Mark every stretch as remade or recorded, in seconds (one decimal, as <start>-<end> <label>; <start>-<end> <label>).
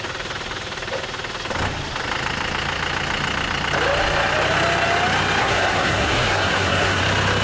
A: 0.0-5.4 recorded; 5.4-7.0 remade; 7.0-7.4 recorded